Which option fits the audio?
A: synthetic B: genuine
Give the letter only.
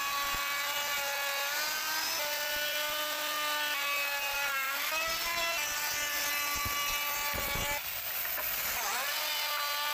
B